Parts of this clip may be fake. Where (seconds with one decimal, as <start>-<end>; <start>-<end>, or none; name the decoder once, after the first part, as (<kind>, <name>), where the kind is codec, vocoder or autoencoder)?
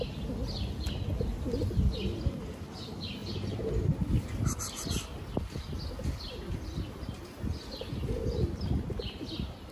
none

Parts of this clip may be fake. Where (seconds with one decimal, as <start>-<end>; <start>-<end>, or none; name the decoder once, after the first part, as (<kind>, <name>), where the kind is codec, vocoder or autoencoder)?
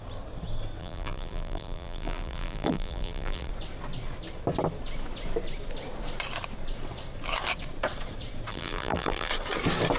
0.8-3.5 (vocoder, BigVGAN v2); 8.5-9.3